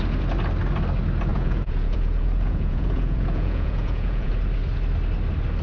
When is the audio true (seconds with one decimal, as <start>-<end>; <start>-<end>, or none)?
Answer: 0.0-1.3; 4.3-5.6